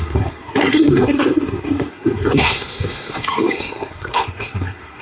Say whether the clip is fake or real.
fake